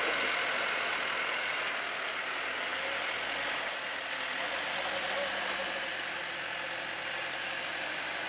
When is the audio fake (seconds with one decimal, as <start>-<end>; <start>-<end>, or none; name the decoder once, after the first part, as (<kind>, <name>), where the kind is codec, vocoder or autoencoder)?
none